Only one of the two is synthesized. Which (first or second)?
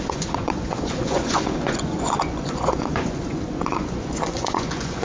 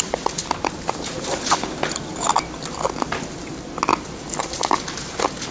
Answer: first